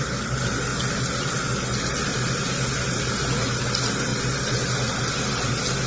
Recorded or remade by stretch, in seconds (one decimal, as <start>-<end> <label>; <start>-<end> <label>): 0.0-5.9 recorded

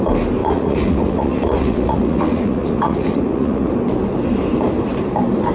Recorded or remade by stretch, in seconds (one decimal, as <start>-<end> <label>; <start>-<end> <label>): 0.0-0.4 recorded; 0.4-3.7 remade; 3.7-5.5 recorded

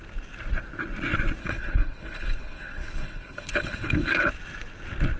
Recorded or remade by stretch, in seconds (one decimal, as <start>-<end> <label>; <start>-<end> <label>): 0.0-1.4 recorded; 1.4-4.3 remade; 4.3-5.2 recorded

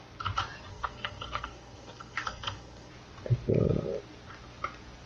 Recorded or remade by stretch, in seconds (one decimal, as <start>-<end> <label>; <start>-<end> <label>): 0.0-0.7 recorded; 0.7-2.9 remade; 2.9-5.1 recorded

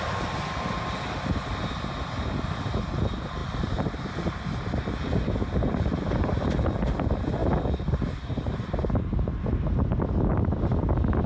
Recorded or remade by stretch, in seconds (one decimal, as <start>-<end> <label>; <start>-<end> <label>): 0.0-11.3 recorded

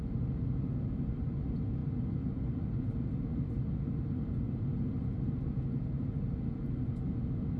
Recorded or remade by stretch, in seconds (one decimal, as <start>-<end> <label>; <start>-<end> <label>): 0.0-7.6 recorded

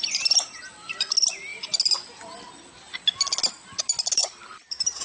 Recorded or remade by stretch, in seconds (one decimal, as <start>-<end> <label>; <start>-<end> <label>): 0.0-5.0 recorded

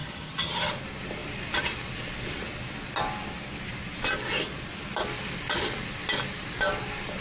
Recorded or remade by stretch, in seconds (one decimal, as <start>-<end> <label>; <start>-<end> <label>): 0.0-0.7 remade; 0.7-7.2 recorded